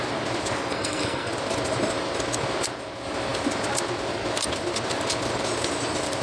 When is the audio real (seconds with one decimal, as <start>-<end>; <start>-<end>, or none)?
0.0-0.7; 1.3-6.2